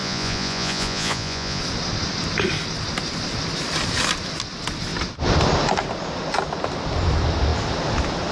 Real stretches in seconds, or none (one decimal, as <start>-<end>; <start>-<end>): 1.6-8.3